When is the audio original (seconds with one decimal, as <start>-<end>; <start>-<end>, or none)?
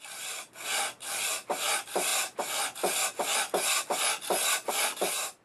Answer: 2.1-4.7